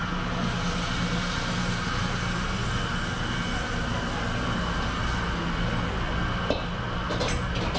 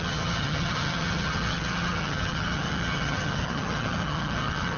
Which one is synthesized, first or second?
second